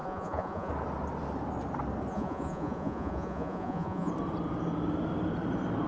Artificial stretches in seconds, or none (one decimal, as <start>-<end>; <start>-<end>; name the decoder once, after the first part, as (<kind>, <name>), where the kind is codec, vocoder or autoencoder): 0.0-0.7 (vocoder, Vocos); 2.1-4.1